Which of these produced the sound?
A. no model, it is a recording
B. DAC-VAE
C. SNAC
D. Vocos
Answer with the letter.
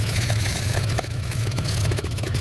B